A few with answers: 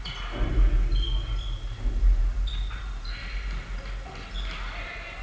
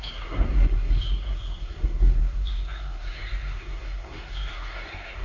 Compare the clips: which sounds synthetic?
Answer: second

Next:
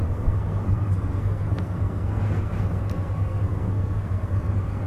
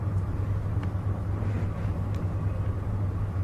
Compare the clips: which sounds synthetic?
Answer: first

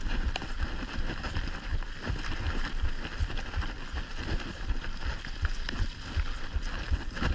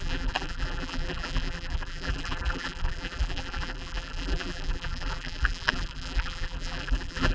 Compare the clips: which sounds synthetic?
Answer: second